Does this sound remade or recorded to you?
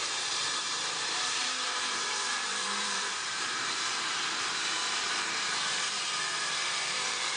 remade